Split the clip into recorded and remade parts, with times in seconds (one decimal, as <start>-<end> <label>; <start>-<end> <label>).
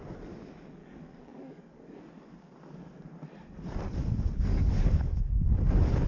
0.0-0.8 recorded; 0.8-2.0 remade; 2.0-4.5 recorded; 4.5-5.2 remade; 5.2-6.1 recorded